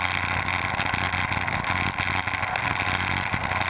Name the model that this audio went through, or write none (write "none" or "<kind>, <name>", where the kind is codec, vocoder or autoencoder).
none